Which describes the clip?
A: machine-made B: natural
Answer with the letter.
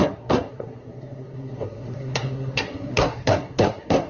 A